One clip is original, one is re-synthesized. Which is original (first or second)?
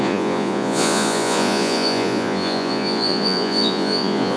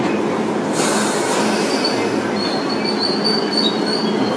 second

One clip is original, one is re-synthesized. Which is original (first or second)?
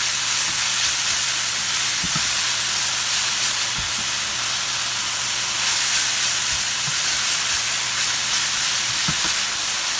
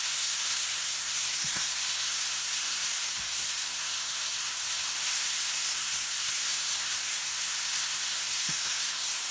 first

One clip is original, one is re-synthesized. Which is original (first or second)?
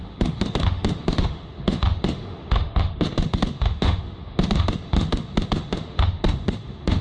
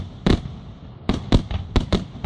second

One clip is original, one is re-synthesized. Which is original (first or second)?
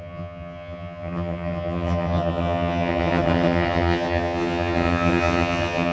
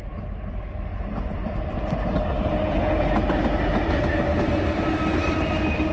second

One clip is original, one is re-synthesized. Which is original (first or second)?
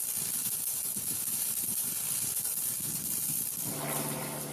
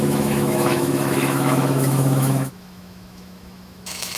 first